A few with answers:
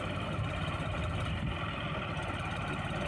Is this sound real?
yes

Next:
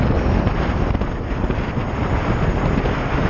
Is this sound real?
yes